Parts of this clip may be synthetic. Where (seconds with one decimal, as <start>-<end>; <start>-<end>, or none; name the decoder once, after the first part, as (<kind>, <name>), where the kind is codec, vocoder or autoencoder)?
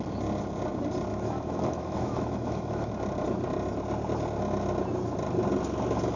1.1-2.9 (autoencoder, DAC-VAE)